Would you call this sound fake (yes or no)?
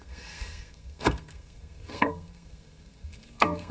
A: yes